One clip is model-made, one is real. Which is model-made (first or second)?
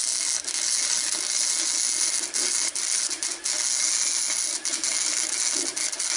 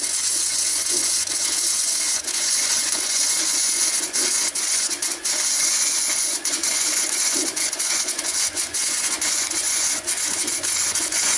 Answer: second